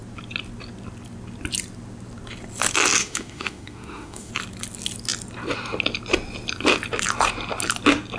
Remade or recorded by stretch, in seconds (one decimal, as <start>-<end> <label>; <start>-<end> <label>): 0.0-3.0 recorded; 3.0-4.3 remade; 4.3-8.2 recorded